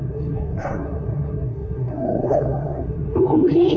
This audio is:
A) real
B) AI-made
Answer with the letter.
B